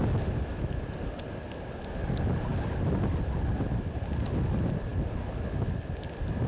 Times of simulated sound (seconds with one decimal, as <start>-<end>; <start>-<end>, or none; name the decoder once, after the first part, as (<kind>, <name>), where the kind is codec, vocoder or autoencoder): none